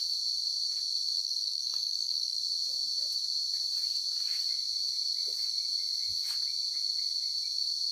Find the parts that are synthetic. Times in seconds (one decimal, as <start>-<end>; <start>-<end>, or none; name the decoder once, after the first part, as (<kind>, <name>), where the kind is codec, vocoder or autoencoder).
1.2-2.4 (codec, SNAC)